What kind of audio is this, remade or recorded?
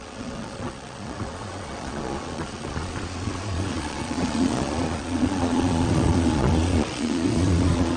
remade